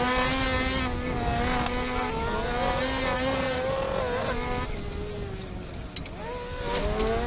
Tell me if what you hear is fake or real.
real